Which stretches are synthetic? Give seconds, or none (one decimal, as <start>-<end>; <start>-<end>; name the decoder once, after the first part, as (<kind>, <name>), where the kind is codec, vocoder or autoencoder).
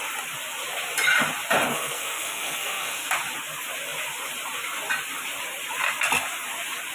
1.7-3.1 (codec, SNAC)